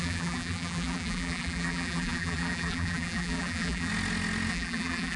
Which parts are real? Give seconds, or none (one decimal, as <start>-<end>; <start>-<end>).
3.9-4.5